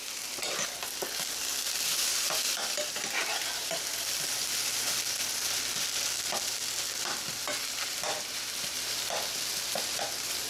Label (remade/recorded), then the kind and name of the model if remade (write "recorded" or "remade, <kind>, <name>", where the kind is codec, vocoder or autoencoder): remade, vocoder, BigVGAN v2